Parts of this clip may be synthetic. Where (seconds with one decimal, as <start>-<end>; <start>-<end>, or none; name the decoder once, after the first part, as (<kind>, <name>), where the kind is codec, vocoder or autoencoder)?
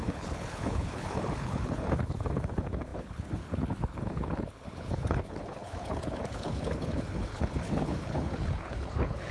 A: 0.0-9.3 (codec, HILCodec)